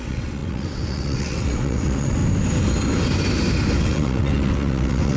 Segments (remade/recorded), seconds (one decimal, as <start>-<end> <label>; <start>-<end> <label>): 0.0-2.2 remade; 2.2-3.8 recorded; 3.8-5.2 remade